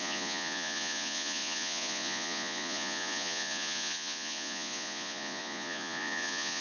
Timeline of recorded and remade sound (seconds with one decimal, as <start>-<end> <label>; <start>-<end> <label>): 0.0-6.6 remade

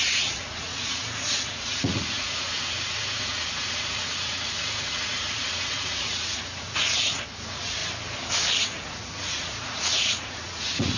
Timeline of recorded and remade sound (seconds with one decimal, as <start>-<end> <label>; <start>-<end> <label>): 0.0-7.8 remade; 7.8-8.6 recorded; 8.6-11.0 remade

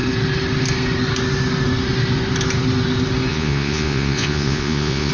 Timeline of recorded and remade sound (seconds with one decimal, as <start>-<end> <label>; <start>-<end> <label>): 0.0-3.3 recorded; 3.3-5.1 remade

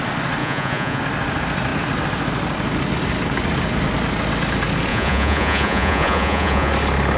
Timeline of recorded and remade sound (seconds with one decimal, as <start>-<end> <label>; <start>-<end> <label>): 0.0-0.4 recorded; 0.4-1.0 remade; 1.0-4.9 recorded; 4.9-6.7 remade; 6.7-7.2 recorded

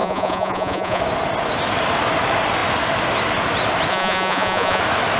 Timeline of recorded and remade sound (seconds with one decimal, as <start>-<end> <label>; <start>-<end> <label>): 0.0-1.0 remade; 1.0-3.9 recorded; 3.9-4.8 remade; 4.8-5.2 recorded

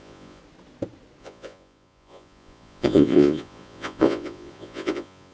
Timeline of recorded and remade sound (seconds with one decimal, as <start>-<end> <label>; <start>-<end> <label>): 0.0-0.4 remade; 0.4-1.2 recorded; 1.2-5.3 remade

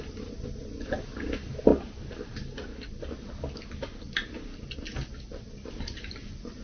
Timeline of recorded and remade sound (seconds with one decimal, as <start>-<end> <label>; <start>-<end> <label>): 0.0-6.6 recorded